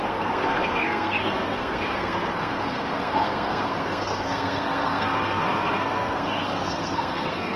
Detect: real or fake fake